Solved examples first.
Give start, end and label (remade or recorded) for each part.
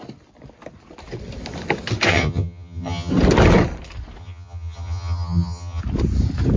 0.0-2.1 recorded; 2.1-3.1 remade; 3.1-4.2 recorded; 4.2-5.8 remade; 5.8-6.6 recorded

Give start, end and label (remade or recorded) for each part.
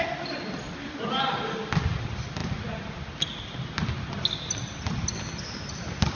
0.0-6.2 recorded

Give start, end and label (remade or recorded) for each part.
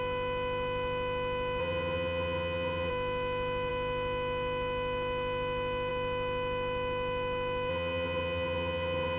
0.0-1.6 recorded; 1.6-2.9 remade; 2.9-7.7 recorded; 7.7-9.2 remade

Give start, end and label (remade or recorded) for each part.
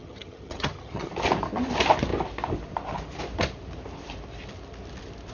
0.0-1.1 remade; 1.1-5.3 recorded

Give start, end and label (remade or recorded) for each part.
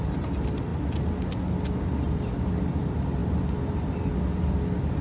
0.0-5.0 recorded